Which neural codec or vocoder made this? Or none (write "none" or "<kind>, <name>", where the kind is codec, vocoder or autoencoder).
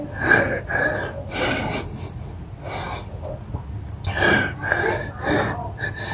none